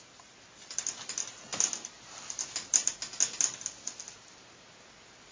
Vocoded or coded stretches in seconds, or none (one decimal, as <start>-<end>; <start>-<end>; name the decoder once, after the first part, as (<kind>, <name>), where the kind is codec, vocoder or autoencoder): none